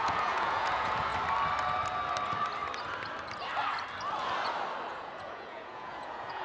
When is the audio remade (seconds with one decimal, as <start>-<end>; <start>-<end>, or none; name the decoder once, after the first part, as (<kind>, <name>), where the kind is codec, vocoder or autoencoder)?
0.0-1.1 (vocoder, Vocos); 4.9-6.4